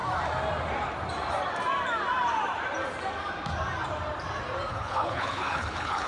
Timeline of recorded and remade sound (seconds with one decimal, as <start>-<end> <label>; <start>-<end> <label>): 0.0-4.7 recorded; 4.7-6.1 remade